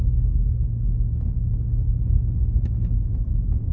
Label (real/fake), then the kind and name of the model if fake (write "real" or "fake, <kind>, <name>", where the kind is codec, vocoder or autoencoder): real